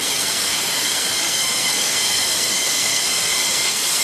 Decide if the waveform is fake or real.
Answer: fake